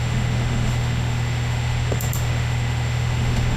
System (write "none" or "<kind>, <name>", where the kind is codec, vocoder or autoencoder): autoencoder, DAC-VAE